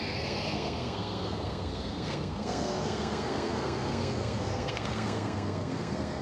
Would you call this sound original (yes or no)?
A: no